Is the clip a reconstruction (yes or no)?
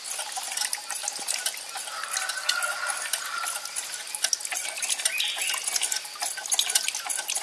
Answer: no